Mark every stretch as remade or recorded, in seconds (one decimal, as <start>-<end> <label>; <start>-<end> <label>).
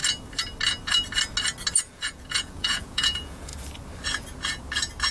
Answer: 0.0-1.8 recorded; 1.8-3.5 remade; 3.5-5.1 recorded